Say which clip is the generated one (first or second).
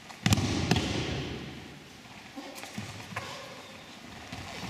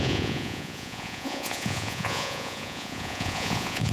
second